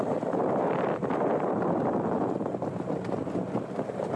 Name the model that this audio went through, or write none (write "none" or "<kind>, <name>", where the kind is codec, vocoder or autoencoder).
none